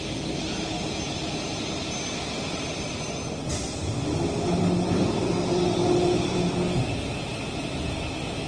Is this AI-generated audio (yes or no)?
no